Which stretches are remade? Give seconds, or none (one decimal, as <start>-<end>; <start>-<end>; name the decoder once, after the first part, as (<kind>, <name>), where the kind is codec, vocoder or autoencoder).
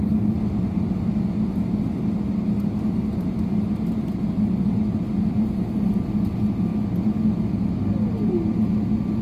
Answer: none